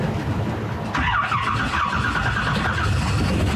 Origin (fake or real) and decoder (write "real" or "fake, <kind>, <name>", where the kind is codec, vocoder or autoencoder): real